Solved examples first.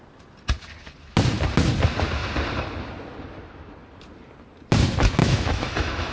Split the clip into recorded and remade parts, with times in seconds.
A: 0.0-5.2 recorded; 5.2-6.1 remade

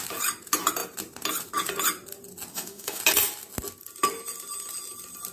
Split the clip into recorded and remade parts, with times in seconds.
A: 0.0-2.5 recorded; 2.5-3.0 remade; 3.0-5.3 recorded